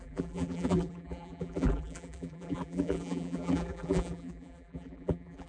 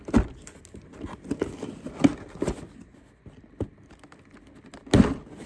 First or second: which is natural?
second